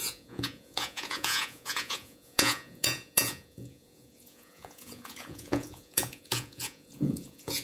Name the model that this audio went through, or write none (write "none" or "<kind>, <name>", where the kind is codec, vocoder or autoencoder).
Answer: vocoder, Vocos